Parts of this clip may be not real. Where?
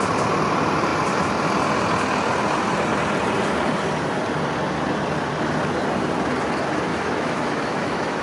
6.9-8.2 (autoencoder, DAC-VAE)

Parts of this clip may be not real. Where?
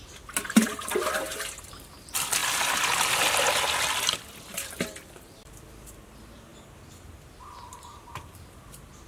0.0-2.4 (vocoder, BigVGAN v2); 4.4-9.1